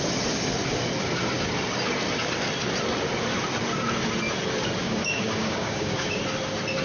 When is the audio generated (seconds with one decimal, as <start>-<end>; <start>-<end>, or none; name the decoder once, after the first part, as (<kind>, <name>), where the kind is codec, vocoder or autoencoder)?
4.8-6.2 (codec, DAC)